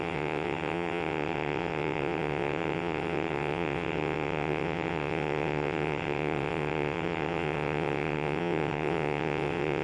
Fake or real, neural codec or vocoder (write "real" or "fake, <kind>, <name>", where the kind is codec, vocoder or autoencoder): fake, vocoder, WaveNeXt